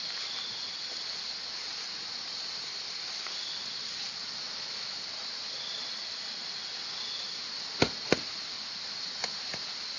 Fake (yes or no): no